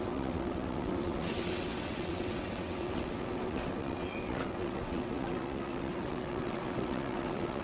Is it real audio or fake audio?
fake